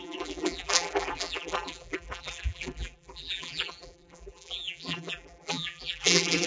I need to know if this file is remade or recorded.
remade